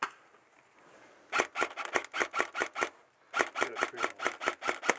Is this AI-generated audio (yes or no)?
no